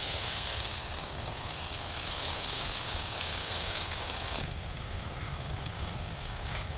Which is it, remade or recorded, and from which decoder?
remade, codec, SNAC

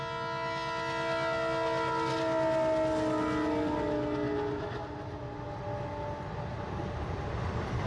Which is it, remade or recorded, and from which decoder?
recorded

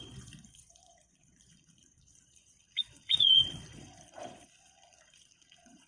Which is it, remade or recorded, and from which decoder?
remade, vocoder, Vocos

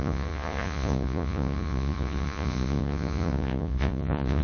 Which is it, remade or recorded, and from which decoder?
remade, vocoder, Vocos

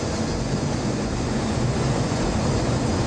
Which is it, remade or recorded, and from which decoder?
remade, vocoder, Vocos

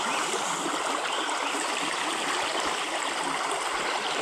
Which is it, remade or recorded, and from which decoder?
recorded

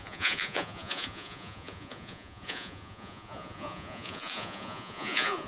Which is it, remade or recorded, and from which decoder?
remade, vocoder, Vocos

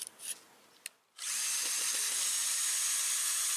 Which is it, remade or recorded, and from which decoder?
recorded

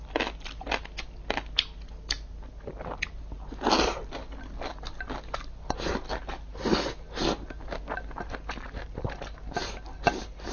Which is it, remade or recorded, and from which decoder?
recorded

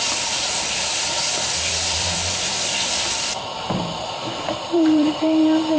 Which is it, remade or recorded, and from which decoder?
remade, vocoder, BigVGAN v2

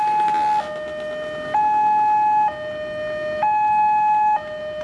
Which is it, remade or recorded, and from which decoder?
recorded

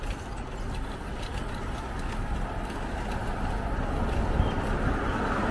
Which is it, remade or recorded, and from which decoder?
recorded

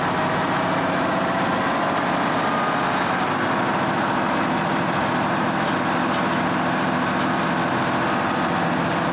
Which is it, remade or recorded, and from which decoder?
recorded